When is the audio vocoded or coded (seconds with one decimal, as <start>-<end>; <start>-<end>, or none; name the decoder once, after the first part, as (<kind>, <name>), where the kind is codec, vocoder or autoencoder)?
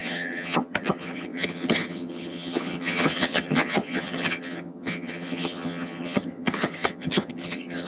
0.0-7.9 (vocoder, HiFi-GAN)